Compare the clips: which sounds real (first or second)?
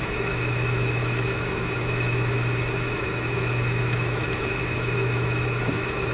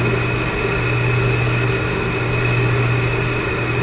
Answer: second